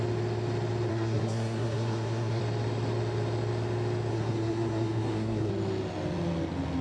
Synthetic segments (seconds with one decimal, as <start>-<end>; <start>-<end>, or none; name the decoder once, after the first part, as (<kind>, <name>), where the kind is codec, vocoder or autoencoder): 0.9-2.4 (codec, SNAC); 4.1-5.5